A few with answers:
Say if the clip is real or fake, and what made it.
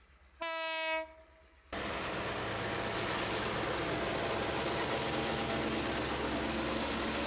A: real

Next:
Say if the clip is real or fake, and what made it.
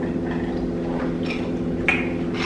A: real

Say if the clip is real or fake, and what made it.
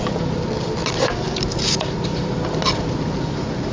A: real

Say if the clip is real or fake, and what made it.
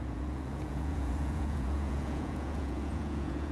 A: fake, vocoder, Vocos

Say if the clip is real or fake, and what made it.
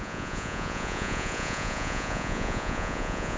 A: fake, vocoder, Vocos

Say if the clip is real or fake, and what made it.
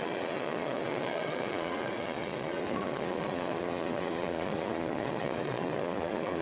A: fake, vocoder, Vocos